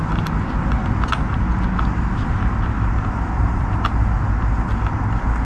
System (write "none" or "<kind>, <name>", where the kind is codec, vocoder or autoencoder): none